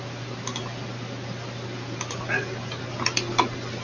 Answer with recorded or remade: recorded